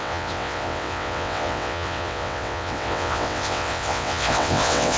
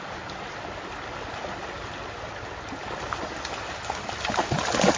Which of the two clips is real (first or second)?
second